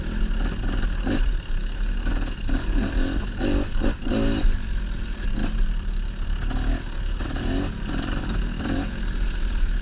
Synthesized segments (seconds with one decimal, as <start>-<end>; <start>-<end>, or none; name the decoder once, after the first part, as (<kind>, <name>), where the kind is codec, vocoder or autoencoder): none